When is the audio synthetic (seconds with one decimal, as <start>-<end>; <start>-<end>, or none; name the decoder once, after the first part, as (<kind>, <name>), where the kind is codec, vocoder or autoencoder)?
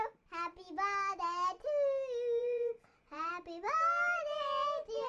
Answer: 2.4-3.3 (vocoder, Vocos)